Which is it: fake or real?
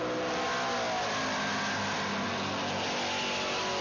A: real